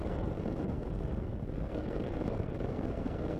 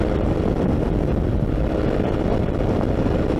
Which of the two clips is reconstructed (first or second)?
first